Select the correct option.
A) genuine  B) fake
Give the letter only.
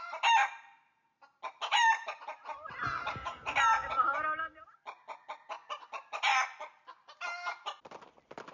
A